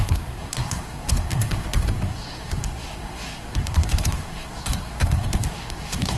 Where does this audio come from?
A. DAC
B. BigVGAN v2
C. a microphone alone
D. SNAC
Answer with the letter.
D